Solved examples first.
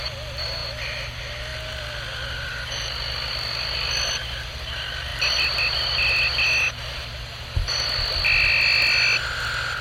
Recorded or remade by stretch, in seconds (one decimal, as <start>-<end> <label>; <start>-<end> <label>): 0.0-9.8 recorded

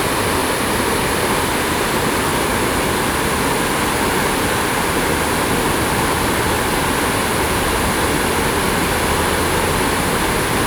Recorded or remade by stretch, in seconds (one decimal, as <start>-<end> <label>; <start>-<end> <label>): 0.0-0.4 recorded; 0.4-0.9 remade; 0.9-2.3 recorded; 2.3-3.3 remade; 3.3-10.7 recorded

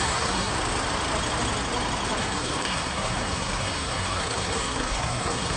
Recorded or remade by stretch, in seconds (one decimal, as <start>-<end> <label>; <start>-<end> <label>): 0.0-0.5 remade; 0.5-2.2 recorded; 2.2-5.6 remade

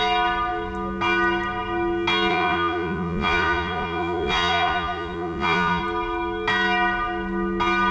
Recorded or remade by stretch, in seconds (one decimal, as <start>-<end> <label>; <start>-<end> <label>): 0.0-2.3 recorded; 2.3-5.8 remade; 5.8-7.9 recorded